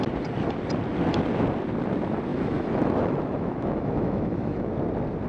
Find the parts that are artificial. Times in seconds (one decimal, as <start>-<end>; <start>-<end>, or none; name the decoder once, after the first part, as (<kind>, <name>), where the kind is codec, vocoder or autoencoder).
2.3-4.7 (autoencoder, DAC-VAE)